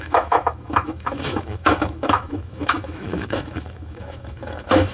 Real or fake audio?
fake